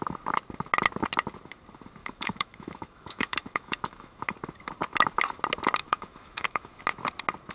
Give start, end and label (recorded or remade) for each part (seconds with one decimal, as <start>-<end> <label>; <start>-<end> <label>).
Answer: 0.0-2.0 recorded; 2.0-4.2 remade; 4.2-5.8 recorded; 5.8-6.8 remade; 6.8-7.5 recorded